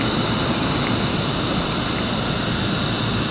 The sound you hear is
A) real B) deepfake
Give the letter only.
A